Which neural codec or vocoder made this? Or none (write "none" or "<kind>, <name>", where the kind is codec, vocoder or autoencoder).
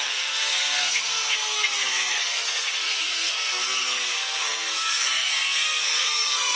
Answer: codec, SNAC